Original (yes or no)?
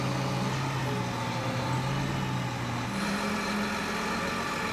yes